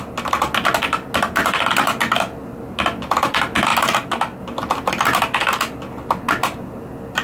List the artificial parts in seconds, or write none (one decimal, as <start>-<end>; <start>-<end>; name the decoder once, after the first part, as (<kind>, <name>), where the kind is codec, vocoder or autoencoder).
none